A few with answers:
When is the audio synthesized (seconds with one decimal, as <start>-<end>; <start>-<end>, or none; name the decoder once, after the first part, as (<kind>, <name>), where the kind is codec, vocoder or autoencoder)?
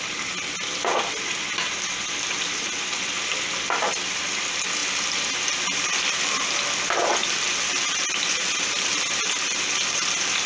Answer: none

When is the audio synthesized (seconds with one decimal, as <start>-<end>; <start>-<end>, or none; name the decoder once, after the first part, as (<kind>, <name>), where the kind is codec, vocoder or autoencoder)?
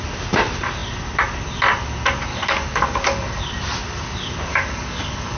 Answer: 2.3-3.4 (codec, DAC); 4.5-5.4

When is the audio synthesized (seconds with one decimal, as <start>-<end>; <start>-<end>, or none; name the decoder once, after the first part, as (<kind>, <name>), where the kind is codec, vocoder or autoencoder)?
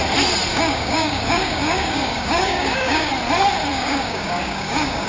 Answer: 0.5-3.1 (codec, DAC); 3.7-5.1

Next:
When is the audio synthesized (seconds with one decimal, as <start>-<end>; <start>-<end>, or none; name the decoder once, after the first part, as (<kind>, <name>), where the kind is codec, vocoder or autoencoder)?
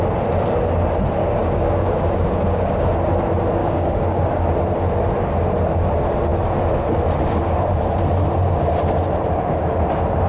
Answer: 1.2-2.9 (codec, DAC); 3.6-4.3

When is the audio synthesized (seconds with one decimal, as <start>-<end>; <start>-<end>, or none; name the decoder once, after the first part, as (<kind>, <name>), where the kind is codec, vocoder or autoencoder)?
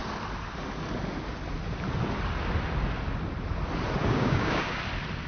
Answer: 4.0-4.8 (codec, DAC)